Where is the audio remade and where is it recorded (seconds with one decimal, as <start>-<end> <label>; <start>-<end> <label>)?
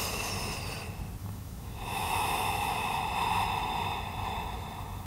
0.0-1.2 recorded; 1.2-3.0 remade; 3.0-5.1 recorded